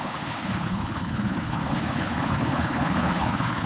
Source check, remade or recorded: remade